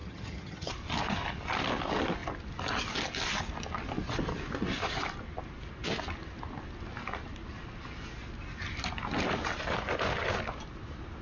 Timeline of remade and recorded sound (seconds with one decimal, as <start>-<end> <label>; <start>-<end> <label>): 0.0-0.7 remade; 0.7-11.2 recorded